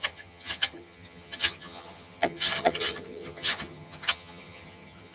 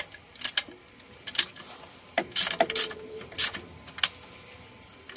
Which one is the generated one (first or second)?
first